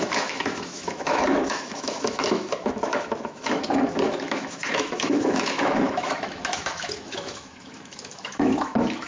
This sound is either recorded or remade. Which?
remade